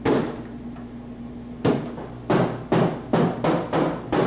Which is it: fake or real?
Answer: real